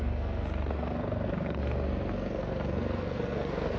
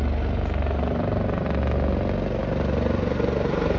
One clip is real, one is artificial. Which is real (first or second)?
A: second